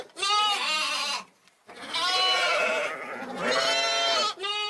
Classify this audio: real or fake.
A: real